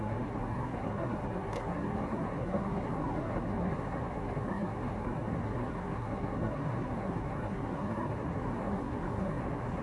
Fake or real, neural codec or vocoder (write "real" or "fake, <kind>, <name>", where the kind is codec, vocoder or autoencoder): fake, codec, SNAC